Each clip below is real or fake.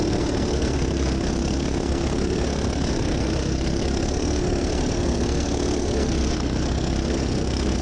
fake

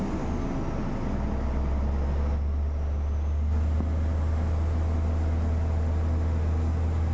real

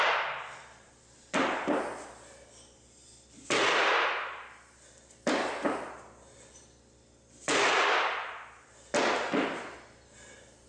real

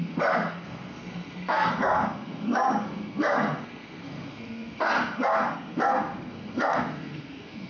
fake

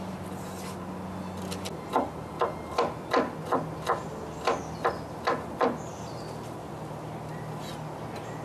real